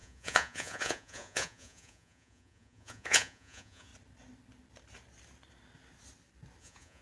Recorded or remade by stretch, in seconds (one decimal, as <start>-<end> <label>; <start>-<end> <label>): 0.0-3.9 remade; 3.9-6.6 recorded; 6.6-7.0 remade